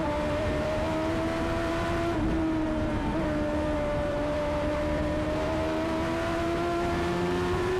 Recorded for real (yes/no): no